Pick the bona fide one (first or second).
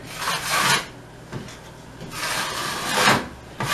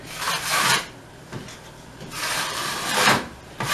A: first